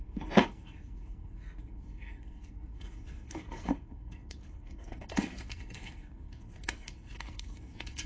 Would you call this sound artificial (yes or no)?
yes